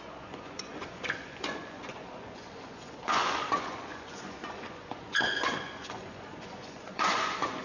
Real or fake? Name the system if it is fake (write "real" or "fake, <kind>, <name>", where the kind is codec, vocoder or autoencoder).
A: fake, vocoder, Vocos